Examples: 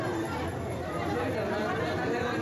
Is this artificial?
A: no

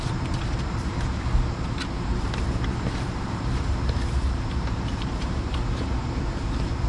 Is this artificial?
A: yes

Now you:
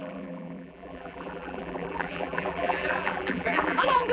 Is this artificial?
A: yes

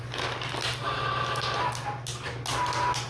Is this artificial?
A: no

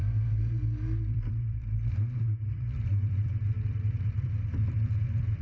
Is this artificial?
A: yes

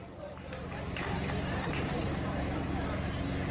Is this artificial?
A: yes